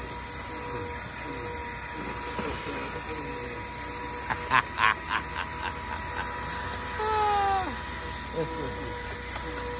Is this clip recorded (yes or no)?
yes